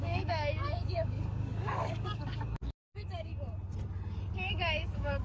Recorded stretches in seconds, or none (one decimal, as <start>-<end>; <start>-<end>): 3.3-4.3

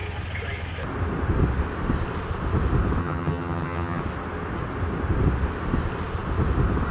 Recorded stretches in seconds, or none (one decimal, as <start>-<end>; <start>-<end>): 0.0-3.0; 4.0-6.9